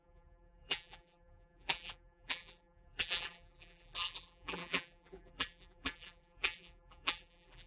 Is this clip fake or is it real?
fake